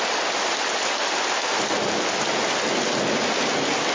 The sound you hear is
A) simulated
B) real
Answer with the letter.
B